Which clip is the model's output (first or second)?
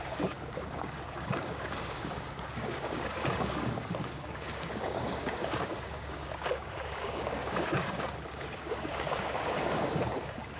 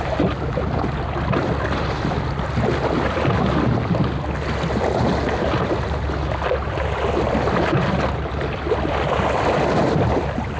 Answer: first